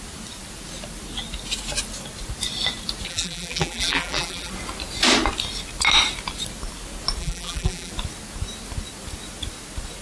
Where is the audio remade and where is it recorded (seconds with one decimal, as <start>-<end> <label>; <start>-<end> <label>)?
0.0-3.1 recorded; 3.1-4.5 remade; 4.5-7.2 recorded; 7.2-7.9 remade; 7.9-10.0 recorded